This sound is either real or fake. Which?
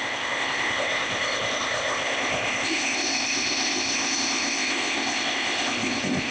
fake